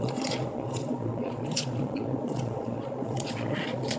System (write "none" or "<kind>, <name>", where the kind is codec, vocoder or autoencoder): vocoder, Vocos